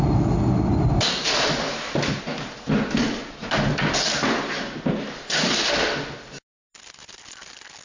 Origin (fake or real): real